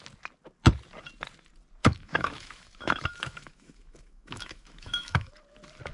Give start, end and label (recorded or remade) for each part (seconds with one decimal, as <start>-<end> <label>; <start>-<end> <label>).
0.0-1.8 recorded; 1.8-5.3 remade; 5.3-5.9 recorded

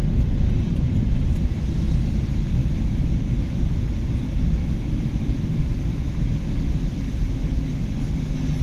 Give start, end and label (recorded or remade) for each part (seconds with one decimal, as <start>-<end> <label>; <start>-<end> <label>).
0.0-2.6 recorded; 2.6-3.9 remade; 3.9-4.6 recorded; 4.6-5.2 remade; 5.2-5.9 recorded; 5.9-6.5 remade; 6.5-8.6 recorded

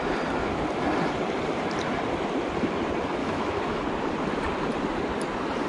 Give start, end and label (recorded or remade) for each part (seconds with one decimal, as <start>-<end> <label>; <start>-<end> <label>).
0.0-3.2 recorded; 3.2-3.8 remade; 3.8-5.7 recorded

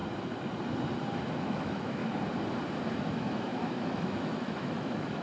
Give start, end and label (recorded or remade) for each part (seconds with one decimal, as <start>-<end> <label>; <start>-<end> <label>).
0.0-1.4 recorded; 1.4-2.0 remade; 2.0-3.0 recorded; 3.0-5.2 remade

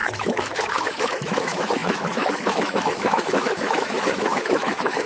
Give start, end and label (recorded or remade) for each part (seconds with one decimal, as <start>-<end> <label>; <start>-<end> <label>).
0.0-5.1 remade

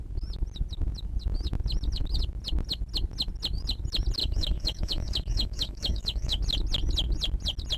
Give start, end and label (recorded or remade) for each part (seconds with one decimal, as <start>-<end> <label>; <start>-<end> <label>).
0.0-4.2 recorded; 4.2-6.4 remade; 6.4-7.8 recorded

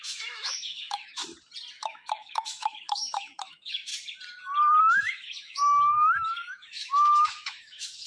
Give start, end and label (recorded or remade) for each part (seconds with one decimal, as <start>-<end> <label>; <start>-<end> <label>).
0.0-1.2 remade; 1.2-1.8 recorded; 1.8-3.9 remade; 3.9-4.8 recorded; 4.8-8.1 remade